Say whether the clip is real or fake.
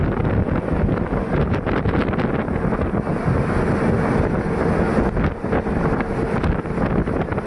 real